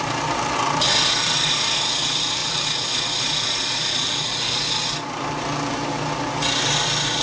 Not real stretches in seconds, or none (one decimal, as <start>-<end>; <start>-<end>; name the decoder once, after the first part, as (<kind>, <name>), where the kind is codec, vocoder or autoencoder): none